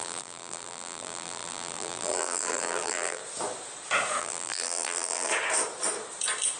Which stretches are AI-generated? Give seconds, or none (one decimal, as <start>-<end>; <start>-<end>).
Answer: 0.0-3.2; 4.2-5.3